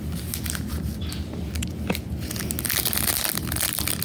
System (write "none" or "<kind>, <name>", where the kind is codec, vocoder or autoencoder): none